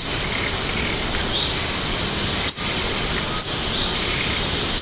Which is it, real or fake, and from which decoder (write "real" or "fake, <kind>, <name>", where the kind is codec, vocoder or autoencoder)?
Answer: real